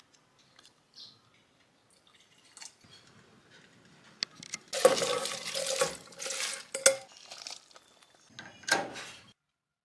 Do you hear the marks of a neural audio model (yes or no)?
no